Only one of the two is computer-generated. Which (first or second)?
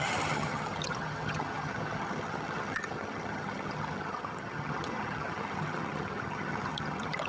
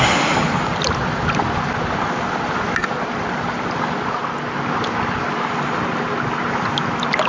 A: first